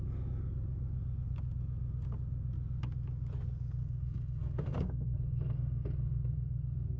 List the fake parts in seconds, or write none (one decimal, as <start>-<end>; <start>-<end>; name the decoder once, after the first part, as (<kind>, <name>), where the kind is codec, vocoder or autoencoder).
3.8-7.0 (codec, SNAC)